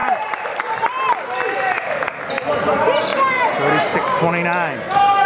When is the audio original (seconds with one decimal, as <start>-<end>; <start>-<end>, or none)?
0.0-5.3